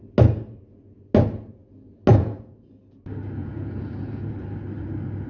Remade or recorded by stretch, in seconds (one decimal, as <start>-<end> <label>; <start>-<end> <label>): 0.0-2.1 recorded; 2.1-2.8 remade; 2.8-3.4 recorded; 3.4-4.3 remade; 4.3-5.3 recorded